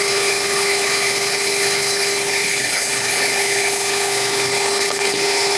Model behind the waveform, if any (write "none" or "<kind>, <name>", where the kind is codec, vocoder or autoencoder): codec, HILCodec